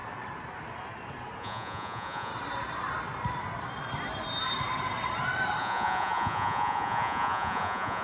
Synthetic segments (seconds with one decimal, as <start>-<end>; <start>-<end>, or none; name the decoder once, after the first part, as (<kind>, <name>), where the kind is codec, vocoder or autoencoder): 1.4-2.3 (vocoder, Vocos); 5.6-8.0